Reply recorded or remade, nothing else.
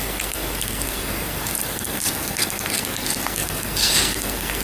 remade